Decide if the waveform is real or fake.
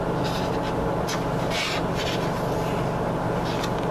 real